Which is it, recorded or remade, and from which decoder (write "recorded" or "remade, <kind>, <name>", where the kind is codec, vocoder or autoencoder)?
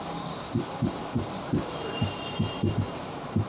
remade, vocoder, BigVGAN v2